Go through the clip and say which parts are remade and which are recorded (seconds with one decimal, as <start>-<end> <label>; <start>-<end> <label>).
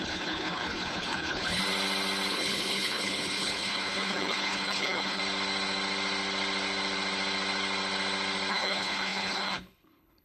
0.0-1.6 remade; 1.6-2.3 recorded; 2.3-5.2 remade; 5.2-8.5 recorded; 8.5-10.2 remade